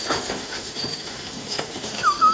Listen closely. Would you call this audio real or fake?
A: fake